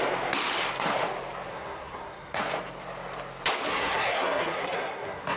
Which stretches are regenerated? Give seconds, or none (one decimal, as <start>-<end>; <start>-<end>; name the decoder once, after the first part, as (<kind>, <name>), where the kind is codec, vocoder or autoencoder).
1.5-2.4 (codec, SNAC); 3.7-5.4